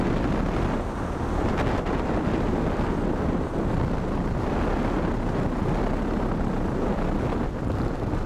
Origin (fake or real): real